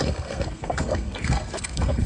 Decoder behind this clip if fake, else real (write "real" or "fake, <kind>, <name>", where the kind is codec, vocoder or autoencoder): fake, codec, SNAC